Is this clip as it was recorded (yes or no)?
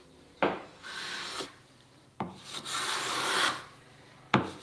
no